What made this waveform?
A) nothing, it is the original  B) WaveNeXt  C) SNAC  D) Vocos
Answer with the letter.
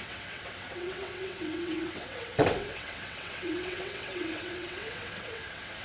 B